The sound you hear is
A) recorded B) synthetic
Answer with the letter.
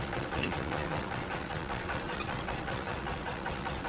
B